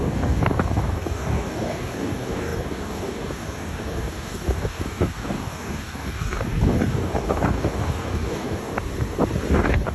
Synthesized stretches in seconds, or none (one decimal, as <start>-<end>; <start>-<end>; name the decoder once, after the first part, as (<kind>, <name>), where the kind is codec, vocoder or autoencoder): 0.0-8.7 (codec, DAC); 9.5-9.9